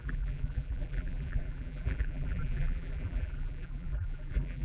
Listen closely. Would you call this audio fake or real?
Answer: fake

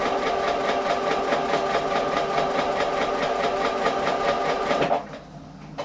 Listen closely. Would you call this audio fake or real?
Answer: real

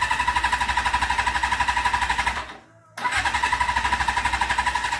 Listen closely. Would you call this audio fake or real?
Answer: real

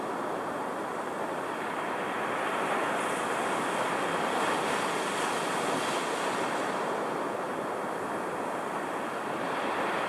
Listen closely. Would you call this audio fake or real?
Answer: real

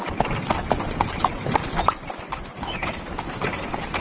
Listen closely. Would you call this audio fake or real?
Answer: real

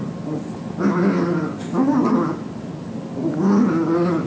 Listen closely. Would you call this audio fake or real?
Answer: real